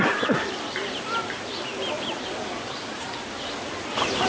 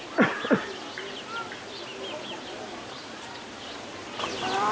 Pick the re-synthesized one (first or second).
first